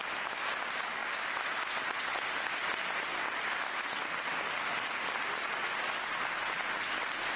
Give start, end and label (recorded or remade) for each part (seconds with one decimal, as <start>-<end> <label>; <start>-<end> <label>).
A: 0.0-7.4 recorded